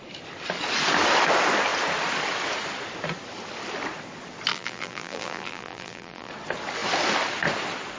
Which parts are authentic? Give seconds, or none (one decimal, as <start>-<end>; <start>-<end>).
0.0-4.5; 6.3-8.0